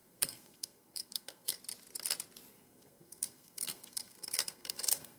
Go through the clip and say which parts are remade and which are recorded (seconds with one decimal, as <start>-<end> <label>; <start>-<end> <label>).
0.0-1.6 remade; 1.6-2.5 recorded; 2.5-5.2 remade

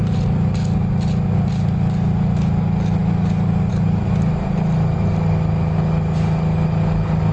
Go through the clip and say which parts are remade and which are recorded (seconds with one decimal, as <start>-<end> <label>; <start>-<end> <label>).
0.0-7.3 recorded

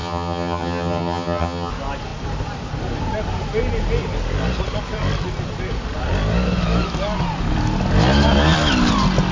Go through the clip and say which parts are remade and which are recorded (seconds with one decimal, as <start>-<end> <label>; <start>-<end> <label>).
0.0-1.7 remade; 1.7-9.3 recorded